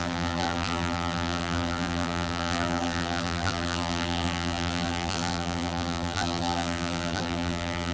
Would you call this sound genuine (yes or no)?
no